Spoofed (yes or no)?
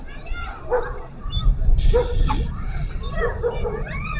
yes